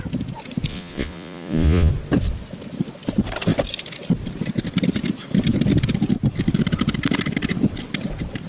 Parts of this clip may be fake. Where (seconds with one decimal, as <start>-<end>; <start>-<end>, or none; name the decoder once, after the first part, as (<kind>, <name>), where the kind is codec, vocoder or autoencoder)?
0.7-1.9 (vocoder, Vocos)